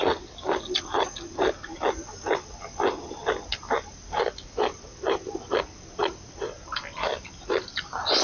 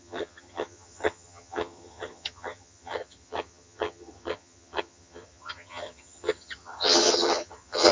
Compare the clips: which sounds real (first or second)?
first